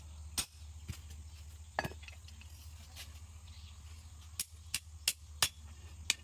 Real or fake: real